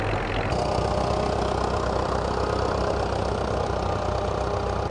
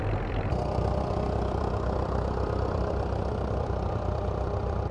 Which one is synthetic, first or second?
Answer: second